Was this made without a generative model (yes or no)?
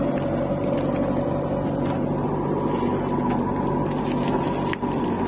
yes